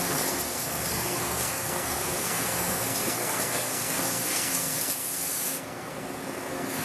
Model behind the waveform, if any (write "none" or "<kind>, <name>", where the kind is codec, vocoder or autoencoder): codec, SNAC